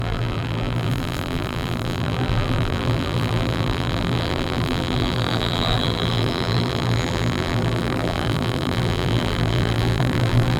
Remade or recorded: remade